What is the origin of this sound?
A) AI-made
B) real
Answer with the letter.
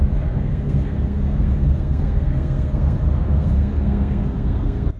A